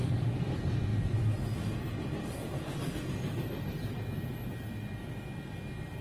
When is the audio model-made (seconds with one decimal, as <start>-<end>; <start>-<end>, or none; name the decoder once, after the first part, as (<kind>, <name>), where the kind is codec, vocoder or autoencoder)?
none